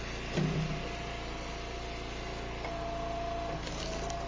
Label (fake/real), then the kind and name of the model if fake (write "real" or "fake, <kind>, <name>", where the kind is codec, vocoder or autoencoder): real